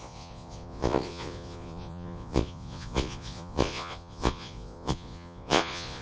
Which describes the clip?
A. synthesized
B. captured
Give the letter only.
A